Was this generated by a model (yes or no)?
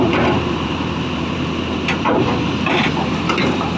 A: yes